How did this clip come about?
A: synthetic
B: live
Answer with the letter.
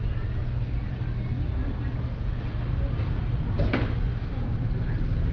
B